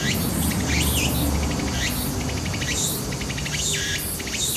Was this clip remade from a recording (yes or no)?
no